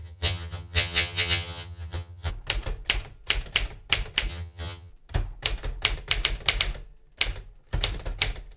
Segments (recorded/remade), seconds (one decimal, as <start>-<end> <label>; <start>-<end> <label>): 0.0-2.3 remade; 2.3-4.3 recorded; 4.3-4.9 remade; 4.9-8.6 recorded